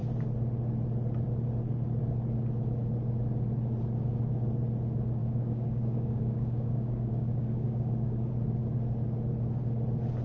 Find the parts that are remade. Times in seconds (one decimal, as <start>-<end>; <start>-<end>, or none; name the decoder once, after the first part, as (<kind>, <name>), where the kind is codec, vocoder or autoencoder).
5.2-8.3 (codec, DAC)